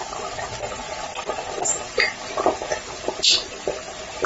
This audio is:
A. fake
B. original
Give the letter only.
B